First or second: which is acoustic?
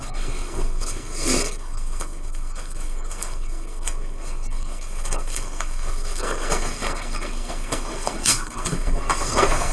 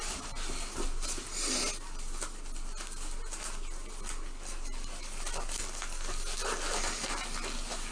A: second